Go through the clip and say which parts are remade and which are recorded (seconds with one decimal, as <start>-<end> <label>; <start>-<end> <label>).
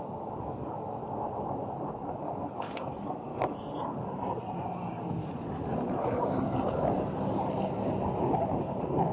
0.0-1.0 remade; 1.0-2.2 recorded; 2.2-3.3 remade; 3.3-8.6 recorded; 8.6-9.1 remade